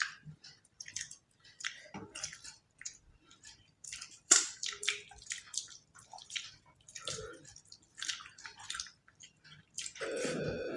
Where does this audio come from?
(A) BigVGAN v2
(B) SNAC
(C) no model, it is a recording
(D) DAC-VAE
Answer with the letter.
A